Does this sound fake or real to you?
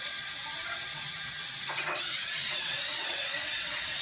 fake